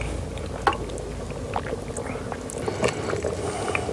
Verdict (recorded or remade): recorded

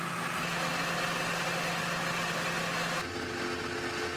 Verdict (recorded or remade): recorded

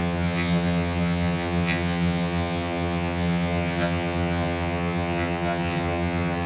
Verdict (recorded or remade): remade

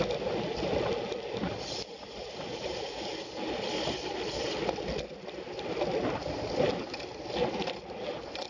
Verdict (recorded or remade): recorded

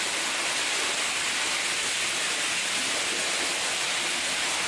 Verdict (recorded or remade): recorded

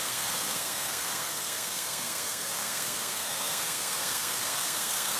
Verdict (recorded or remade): remade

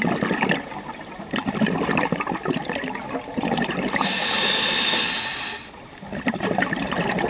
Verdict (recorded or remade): recorded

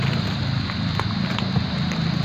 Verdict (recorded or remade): recorded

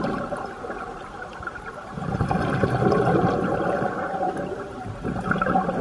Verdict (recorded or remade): remade